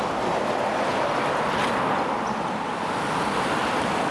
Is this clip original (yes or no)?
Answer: yes